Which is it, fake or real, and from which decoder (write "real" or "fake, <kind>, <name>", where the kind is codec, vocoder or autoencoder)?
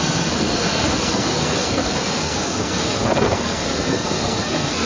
fake, codec, SNAC